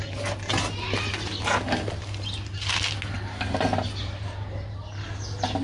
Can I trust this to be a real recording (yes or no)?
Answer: yes